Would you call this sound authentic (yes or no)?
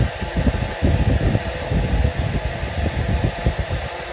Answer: yes